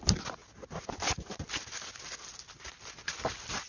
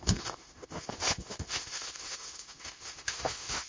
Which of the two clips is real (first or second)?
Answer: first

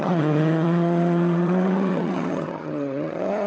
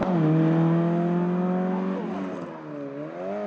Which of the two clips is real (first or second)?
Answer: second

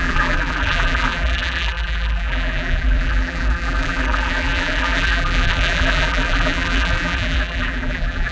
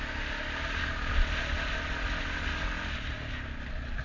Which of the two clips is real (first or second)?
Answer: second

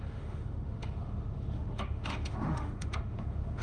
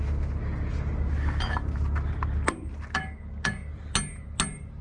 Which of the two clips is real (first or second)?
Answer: second